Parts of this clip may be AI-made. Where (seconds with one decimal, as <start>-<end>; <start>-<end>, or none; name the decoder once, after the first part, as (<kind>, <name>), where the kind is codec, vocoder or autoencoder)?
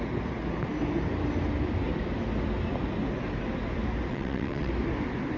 4.1-4.7 (vocoder, WaveNeXt)